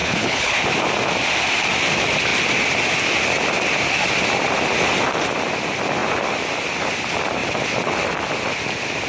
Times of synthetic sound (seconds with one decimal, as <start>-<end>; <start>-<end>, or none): 0.0-0.6